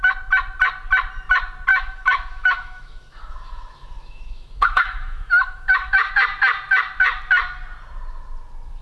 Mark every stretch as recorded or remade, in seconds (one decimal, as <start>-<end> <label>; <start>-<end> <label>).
0.0-1.7 recorded; 1.7-6.1 remade; 6.1-8.8 recorded